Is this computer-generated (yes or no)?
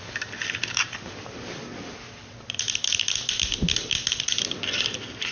no